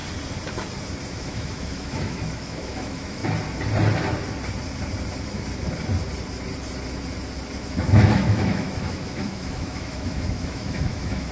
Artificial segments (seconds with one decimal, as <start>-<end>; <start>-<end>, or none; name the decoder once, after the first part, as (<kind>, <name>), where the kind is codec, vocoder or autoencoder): 1.1-3.2 (autoencoder, DAC-VAE); 7.6-11.3